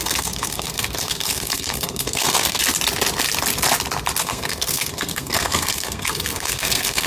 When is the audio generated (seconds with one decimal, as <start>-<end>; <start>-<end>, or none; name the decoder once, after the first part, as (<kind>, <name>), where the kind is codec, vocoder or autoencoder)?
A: 0.0-2.6 (codec, SNAC); 4.2-7.1